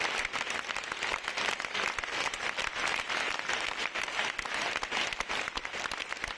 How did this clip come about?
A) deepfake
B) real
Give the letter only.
A